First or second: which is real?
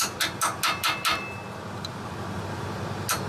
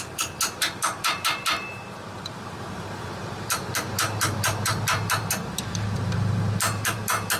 first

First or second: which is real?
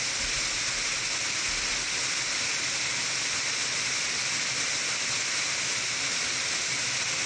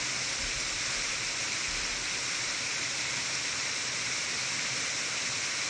first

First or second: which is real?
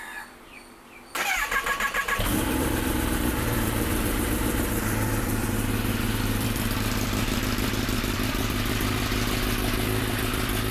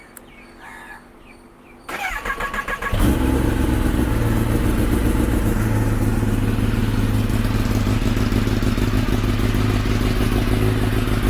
second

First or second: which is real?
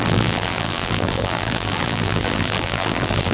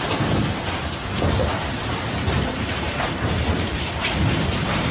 second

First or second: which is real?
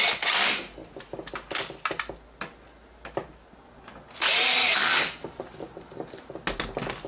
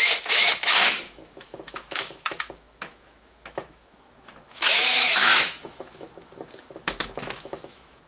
first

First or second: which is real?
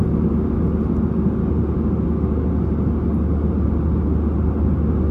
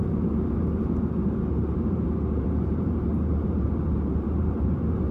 first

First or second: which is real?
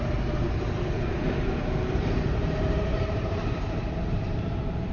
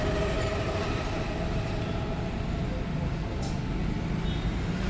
second